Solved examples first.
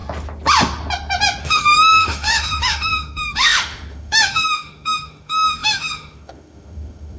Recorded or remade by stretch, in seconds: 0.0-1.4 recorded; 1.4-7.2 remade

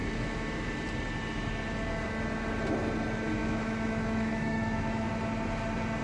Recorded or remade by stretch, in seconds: 0.0-0.7 remade; 0.7-3.4 recorded; 3.4-5.1 remade; 5.1-6.0 recorded

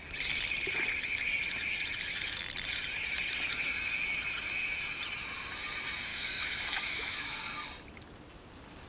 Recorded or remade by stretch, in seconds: 0.0-6.1 recorded; 6.1-7.4 remade; 7.4-8.9 recorded